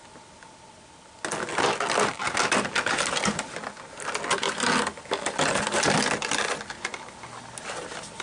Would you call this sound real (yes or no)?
yes